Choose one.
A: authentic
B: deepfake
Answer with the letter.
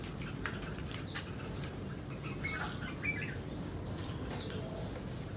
A